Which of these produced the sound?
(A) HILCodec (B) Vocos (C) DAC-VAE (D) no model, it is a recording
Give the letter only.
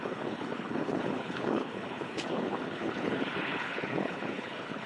A